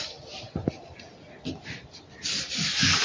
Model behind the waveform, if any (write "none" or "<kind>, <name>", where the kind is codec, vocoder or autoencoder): none